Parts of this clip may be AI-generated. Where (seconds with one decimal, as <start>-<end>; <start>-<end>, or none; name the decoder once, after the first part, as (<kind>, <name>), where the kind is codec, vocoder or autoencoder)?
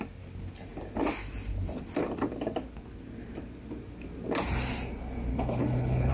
5.3-6.1 (codec, HILCodec)